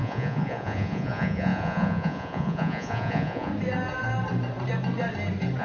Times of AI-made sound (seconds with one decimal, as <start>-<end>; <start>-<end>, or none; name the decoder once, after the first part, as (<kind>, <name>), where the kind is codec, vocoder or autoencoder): 0.0-3.5 (vocoder, Vocos)